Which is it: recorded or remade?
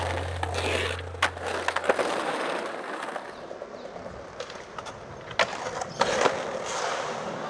recorded